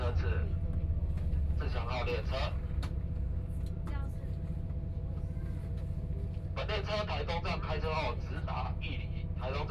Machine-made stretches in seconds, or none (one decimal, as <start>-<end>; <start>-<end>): none